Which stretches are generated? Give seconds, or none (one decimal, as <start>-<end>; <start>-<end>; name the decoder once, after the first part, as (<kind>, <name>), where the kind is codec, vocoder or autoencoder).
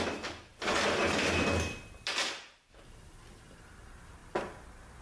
none